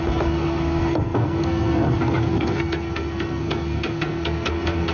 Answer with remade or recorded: remade